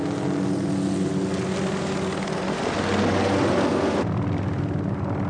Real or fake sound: real